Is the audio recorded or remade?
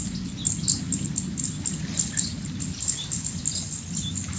recorded